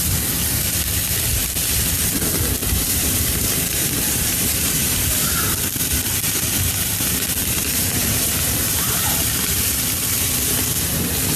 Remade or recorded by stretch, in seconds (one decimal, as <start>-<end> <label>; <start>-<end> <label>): 0.0-2.6 recorded; 2.6-5.6 remade; 5.6-7.4 recorded; 7.4-9.7 remade; 9.7-11.4 recorded